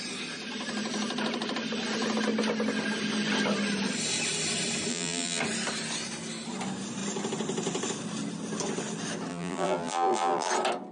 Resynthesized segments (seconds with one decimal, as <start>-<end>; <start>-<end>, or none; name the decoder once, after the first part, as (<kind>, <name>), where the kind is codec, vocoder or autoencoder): 4.9-5.4 (vocoder, BigVGAN v2); 9.3-10.5